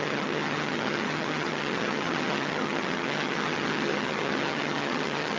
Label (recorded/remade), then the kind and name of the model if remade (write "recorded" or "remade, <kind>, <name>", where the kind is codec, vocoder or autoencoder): remade, vocoder, HiFi-GAN